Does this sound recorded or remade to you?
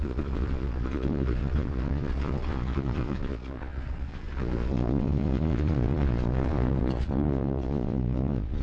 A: remade